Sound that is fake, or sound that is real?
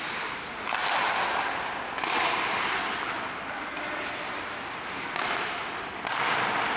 real